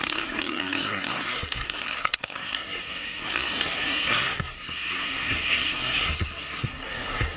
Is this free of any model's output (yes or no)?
no